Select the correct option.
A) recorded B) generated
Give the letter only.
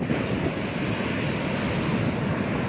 A